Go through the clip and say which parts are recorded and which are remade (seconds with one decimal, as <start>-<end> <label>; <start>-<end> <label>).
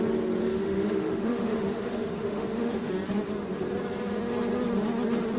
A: 0.0-0.4 recorded; 0.4-2.9 remade; 2.9-5.4 recorded